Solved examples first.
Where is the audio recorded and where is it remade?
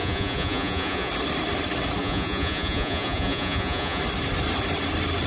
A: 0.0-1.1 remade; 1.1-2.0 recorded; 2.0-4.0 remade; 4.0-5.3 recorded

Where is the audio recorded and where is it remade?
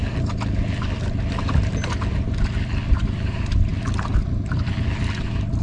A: 0.0-5.6 recorded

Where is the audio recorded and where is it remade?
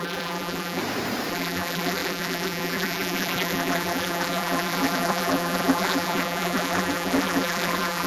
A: 0.0-0.8 remade; 0.8-1.3 recorded; 1.3-8.1 remade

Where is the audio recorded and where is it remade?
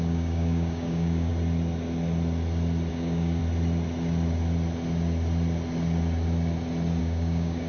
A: 0.0-1.3 remade; 1.3-2.9 recorded; 2.9-3.4 remade; 3.4-7.0 recorded; 7.0-7.7 remade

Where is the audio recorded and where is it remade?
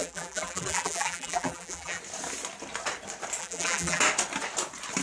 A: 0.0-2.0 remade; 2.0-3.4 recorded; 3.4-4.0 remade; 4.0-5.0 recorded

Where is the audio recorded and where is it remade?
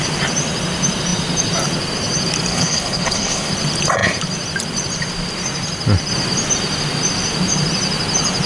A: 0.0-2.5 recorded; 2.5-3.5 remade; 3.5-8.5 recorded